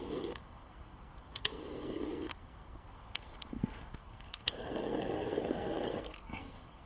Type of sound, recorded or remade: remade